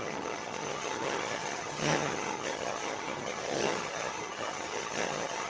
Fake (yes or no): yes